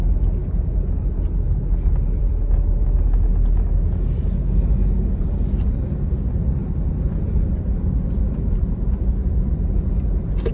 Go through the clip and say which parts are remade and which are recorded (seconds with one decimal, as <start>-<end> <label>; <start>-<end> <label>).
0.0-6.6 recorded; 6.6-10.5 remade